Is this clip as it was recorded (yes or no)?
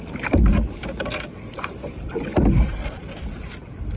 yes